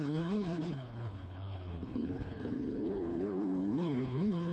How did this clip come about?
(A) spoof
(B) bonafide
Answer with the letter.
A